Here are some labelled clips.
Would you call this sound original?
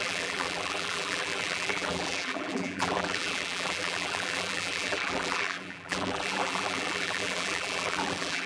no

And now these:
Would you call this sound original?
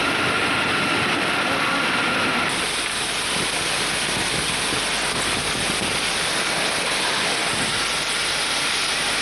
yes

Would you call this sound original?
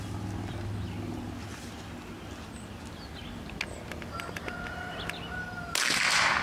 yes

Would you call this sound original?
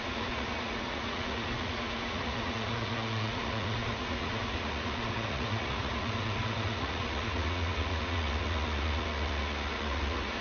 no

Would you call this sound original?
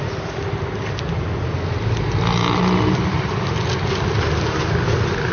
yes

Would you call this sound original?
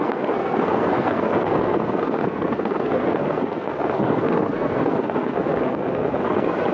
no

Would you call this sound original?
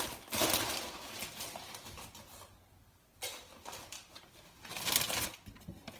yes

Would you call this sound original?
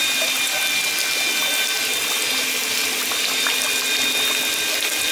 yes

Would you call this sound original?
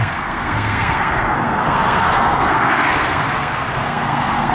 no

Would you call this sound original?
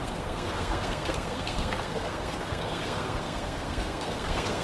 no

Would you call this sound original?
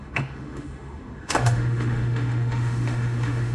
no